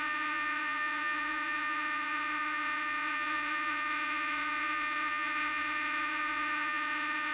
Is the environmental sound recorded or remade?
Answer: remade